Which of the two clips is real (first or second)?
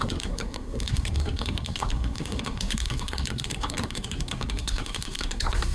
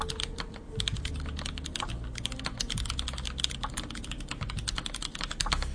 second